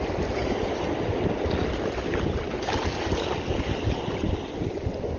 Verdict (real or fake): real